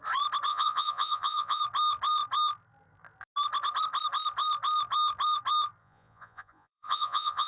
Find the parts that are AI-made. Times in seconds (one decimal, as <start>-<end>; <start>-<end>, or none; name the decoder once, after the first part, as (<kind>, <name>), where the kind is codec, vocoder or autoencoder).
0.5-1.6 (vocoder, Vocos); 5.8-7.5